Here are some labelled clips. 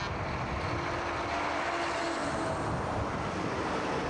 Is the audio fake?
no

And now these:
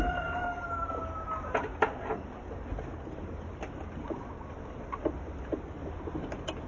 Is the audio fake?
no